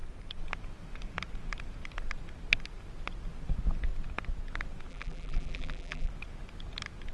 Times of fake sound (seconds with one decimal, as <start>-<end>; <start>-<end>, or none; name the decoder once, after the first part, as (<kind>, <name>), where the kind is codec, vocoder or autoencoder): 4.9-6.1 (vocoder, BigVGAN v2)